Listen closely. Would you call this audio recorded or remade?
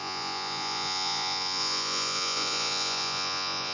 remade